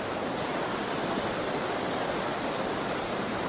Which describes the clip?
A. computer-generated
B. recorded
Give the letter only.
B